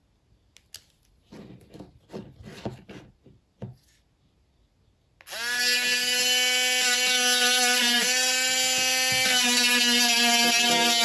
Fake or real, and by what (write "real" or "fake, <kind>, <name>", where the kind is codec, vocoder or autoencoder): real